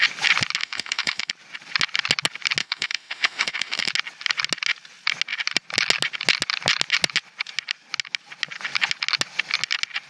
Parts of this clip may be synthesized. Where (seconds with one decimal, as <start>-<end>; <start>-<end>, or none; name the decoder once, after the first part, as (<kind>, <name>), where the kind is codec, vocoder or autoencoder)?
0.6-1.3 (autoencoder, DAC-VAE); 2.6-3.9